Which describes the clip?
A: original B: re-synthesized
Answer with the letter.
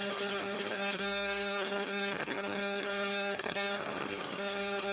B